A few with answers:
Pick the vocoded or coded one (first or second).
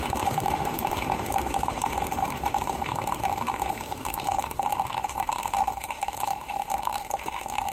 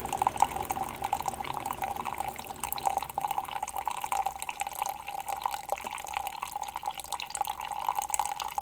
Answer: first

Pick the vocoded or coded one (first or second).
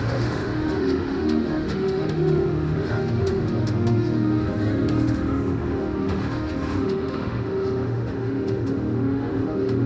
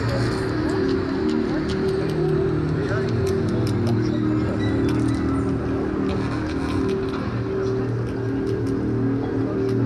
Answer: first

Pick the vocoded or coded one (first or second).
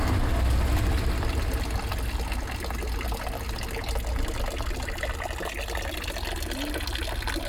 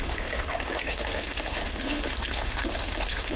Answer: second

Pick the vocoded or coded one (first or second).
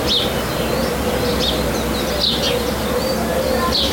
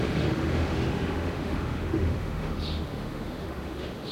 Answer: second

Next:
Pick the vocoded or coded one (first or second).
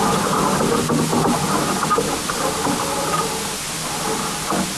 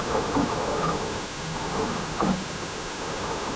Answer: second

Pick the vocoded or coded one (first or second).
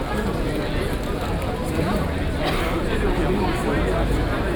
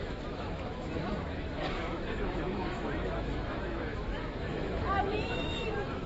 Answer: second